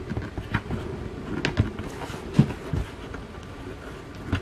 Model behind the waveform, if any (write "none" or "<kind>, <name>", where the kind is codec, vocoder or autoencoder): none